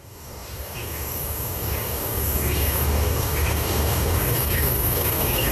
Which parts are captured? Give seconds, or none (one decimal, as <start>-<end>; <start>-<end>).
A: none